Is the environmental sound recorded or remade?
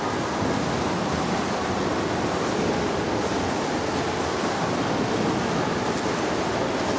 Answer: recorded